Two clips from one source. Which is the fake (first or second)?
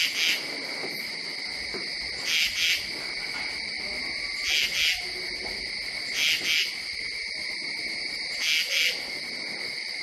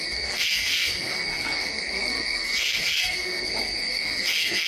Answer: second